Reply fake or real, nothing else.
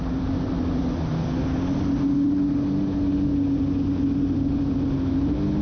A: real